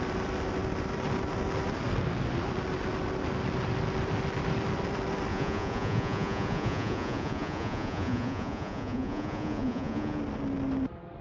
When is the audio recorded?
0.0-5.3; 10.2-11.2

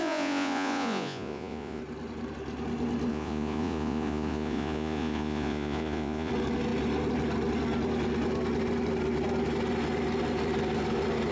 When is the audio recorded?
1.8-3.1; 6.3-11.3